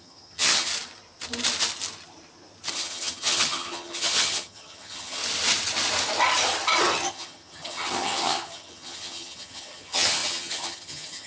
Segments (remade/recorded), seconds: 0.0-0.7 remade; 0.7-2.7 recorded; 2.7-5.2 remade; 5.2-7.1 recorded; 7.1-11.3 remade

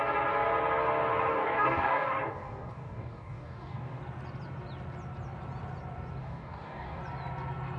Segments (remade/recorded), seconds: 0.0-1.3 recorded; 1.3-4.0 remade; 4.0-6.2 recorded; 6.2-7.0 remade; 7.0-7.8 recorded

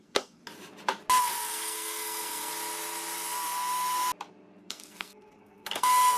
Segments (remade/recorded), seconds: 0.0-0.4 remade; 0.4-1.2 recorded; 1.2-2.5 remade; 2.5-4.6 recorded; 4.6-6.2 remade

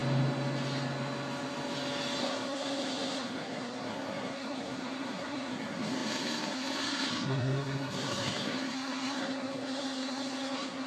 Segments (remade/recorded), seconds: 0.0-2.2 recorded; 2.2-10.9 remade

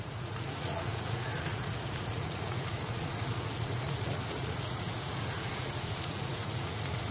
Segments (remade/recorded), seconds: 0.0-7.1 remade